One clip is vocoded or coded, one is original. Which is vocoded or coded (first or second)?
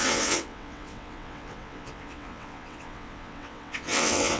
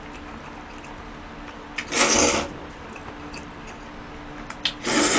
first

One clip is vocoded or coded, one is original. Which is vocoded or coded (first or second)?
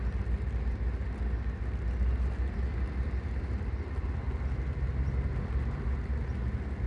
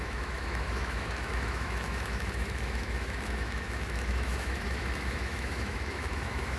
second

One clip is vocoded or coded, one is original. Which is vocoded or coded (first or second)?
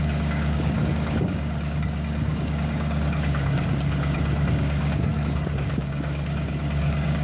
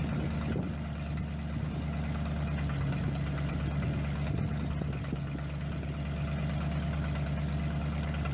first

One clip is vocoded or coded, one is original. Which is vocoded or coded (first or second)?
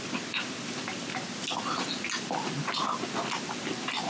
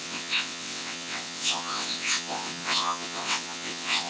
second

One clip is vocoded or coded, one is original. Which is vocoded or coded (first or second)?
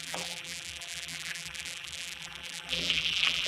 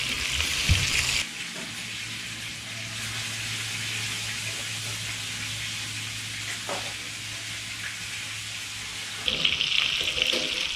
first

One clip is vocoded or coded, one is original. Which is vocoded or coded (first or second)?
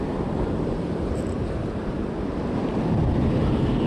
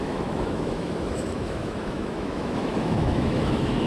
second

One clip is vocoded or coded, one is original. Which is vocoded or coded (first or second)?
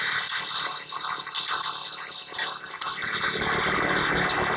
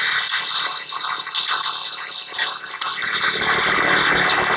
first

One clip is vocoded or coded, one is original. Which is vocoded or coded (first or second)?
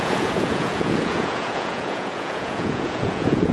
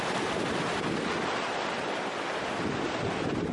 first